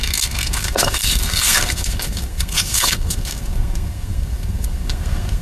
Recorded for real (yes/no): no